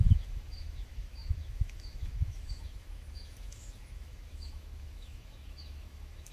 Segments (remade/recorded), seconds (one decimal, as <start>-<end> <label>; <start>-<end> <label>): 0.0-6.3 remade